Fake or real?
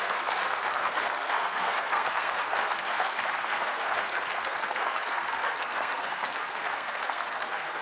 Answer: fake